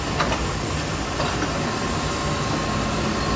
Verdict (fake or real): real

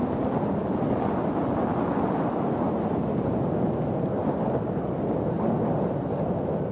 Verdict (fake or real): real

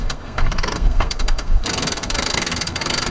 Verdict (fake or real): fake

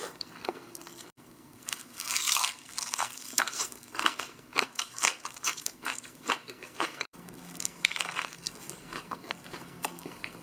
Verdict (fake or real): fake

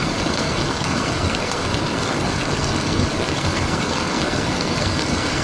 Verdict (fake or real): fake